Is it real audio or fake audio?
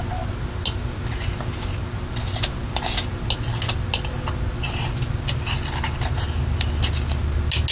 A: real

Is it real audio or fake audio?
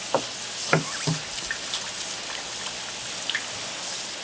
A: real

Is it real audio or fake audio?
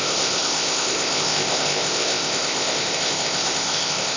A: fake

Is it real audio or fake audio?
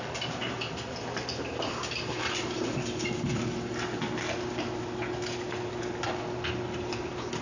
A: real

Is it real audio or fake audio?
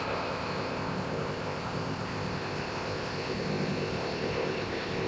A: fake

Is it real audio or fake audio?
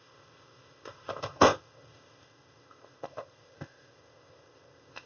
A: fake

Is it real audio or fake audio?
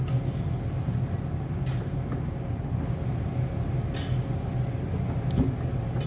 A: real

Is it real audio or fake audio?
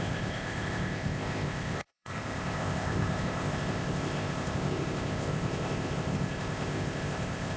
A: fake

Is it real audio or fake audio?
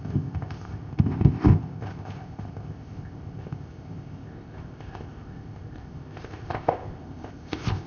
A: fake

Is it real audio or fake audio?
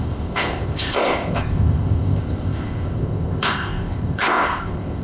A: fake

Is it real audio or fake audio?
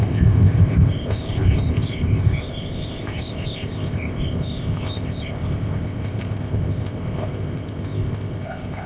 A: fake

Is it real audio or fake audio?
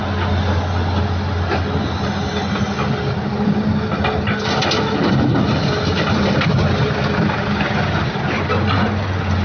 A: real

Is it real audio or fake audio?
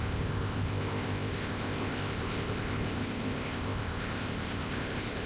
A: fake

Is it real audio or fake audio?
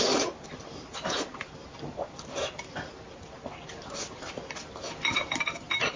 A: real